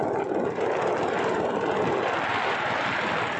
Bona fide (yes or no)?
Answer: no